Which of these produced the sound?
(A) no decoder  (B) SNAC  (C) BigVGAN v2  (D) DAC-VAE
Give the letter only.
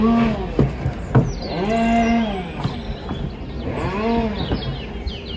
A